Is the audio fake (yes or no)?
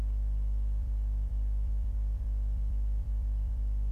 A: yes